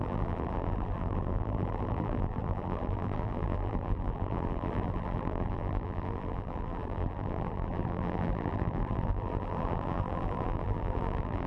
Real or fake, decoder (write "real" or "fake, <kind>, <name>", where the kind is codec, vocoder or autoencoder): fake, vocoder, BigVGAN v2